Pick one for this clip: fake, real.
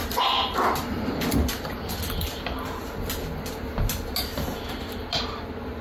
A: real